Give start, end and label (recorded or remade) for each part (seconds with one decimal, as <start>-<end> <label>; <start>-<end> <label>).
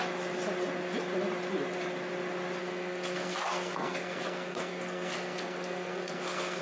0.0-2.6 recorded; 2.6-6.6 remade